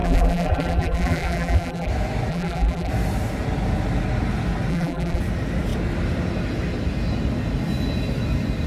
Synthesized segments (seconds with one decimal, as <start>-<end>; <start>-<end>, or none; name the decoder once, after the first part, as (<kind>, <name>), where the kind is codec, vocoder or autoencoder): 0.0-1.9 (vocoder, BigVGAN v2); 2.3-2.9; 4.7-5.2